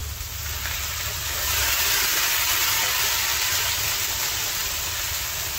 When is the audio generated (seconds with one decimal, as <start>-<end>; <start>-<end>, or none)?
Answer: none